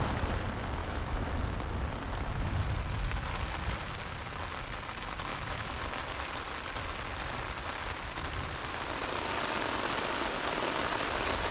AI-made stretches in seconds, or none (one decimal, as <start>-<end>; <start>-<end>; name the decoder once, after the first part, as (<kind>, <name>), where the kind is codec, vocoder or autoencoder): 0.8-1.4 (autoencoder, DAC-VAE); 5.3-5.8